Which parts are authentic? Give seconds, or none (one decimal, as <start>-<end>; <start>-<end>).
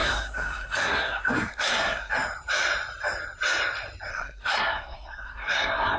2.1-4.1